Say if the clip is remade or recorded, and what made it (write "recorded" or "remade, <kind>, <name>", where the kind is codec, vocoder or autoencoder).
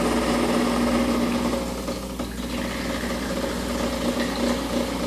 recorded